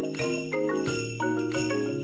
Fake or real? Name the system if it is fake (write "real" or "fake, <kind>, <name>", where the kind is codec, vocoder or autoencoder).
real